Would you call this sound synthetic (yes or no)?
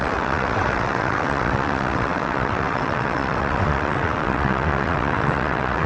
yes